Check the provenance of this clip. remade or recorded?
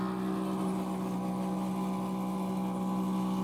recorded